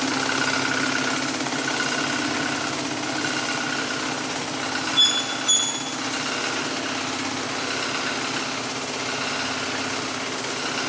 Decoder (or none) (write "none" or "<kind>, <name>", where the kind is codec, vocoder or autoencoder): none